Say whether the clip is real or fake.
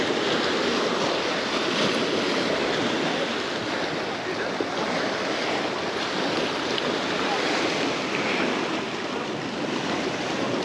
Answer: real